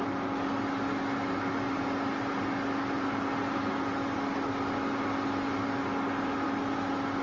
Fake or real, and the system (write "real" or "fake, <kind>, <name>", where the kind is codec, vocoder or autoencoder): real